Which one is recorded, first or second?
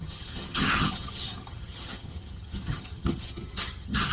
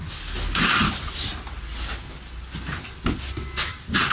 second